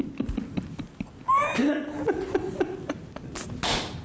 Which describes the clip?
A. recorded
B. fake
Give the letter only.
A